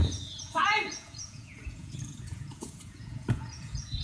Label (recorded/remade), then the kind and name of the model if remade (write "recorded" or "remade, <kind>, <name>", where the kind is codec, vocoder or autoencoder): remade, vocoder, Vocos